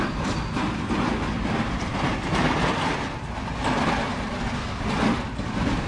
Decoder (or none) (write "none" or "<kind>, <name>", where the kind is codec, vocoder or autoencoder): none